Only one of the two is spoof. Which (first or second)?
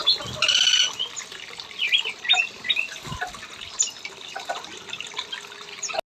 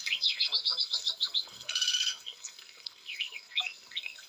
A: second